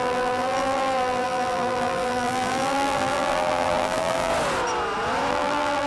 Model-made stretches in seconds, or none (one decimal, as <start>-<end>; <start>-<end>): 0.0-4.3; 5.3-5.9